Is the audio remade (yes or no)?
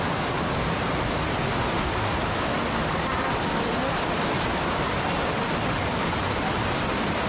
no